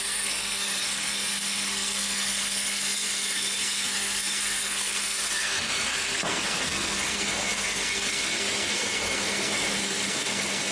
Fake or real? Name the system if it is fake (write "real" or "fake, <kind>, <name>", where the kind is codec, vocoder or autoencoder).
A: fake, codec, SNAC